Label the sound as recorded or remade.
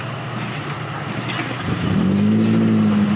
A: recorded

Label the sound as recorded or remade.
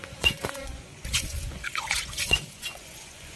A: remade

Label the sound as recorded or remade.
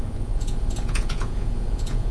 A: remade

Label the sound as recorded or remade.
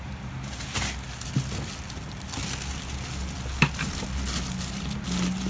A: recorded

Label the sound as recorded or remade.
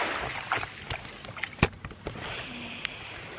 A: recorded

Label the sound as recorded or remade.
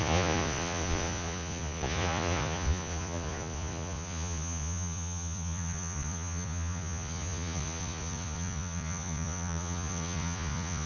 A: remade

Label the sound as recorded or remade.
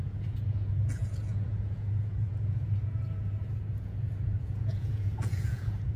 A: remade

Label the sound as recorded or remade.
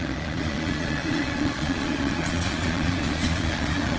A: remade